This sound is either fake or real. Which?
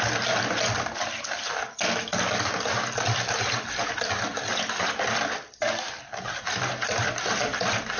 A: real